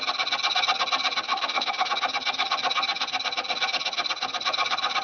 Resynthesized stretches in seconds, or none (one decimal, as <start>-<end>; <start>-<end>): 1.3-1.9